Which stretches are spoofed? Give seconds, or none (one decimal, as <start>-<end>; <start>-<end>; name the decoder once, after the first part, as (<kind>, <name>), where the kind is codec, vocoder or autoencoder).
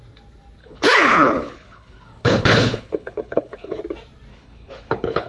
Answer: 0.6-3.8 (codec, HILCodec); 4.3-5.3